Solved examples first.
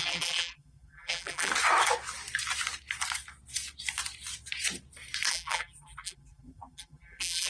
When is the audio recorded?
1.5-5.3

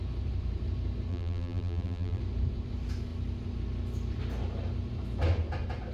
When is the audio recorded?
0.0-1.1; 2.2-5.9

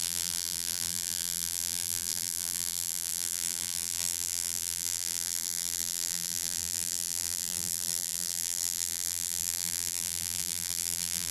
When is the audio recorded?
none

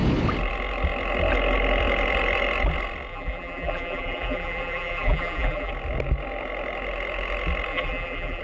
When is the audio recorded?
0.0-3.1; 5.7-7.7

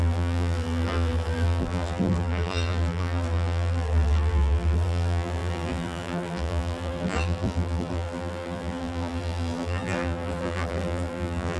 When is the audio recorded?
none